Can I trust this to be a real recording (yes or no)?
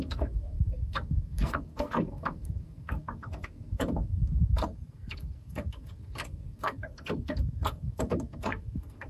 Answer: no